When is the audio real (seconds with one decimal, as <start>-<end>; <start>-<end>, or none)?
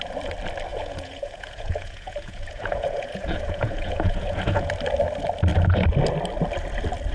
0.0-0.7; 4.7-7.1